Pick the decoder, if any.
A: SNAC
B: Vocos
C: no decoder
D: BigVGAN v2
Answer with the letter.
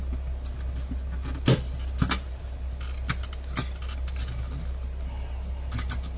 C